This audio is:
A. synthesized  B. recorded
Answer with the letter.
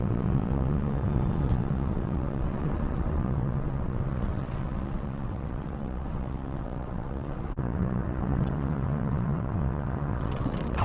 A